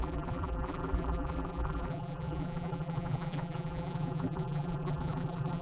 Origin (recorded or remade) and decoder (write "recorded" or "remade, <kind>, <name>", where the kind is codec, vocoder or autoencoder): remade, vocoder, BigVGAN v2